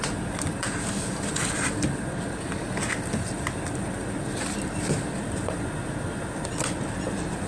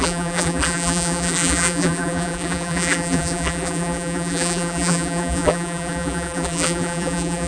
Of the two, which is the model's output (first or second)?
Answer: second